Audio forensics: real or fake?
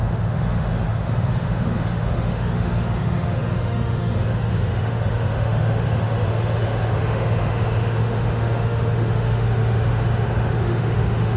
fake